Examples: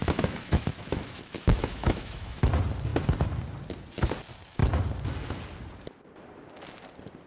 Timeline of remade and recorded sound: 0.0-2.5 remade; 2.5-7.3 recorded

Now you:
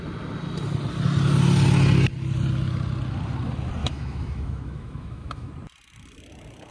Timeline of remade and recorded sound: 0.0-3.8 recorded; 3.8-5.5 remade; 5.5-6.7 recorded

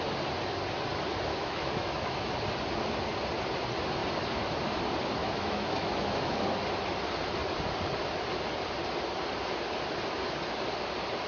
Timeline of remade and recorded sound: 0.0-1.3 recorded; 1.3-2.3 remade; 2.3-5.2 recorded; 5.2-6.4 remade; 6.4-11.3 recorded